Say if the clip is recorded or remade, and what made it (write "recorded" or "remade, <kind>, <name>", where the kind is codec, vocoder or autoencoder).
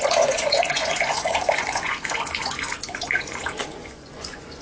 remade, vocoder, Vocos